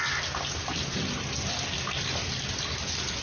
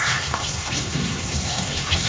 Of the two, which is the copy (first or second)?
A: second